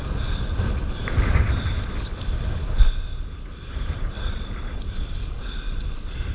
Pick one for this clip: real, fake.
fake